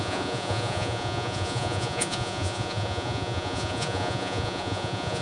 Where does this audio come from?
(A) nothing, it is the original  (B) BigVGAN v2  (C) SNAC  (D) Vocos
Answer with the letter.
D